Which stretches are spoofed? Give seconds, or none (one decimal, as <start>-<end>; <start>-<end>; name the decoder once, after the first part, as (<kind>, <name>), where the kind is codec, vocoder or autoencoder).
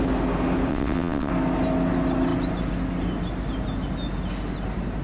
0.7-1.3 (vocoder, WaveNeXt)